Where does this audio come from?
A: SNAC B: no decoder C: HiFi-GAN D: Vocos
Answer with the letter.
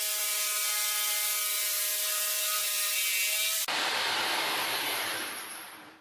B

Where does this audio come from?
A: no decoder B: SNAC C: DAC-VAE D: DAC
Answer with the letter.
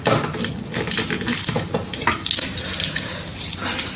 A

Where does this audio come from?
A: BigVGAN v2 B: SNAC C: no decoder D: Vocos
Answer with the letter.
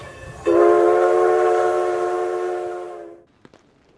C